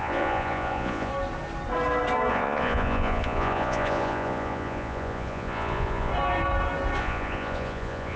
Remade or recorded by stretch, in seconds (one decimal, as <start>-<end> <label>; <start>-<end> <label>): 0.0-1.1 remade; 1.1-2.3 recorded; 2.3-6.1 remade; 6.1-7.0 recorded; 7.0-8.2 remade